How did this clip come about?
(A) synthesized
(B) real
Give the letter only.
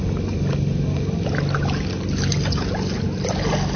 B